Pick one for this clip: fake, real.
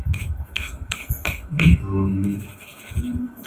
fake